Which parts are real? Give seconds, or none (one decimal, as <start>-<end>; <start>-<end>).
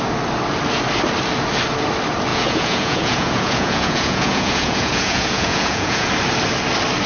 0.0-2.3; 6.1-7.1